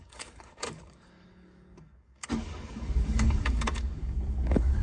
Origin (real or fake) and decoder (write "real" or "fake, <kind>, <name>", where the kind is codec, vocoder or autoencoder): fake, codec, DAC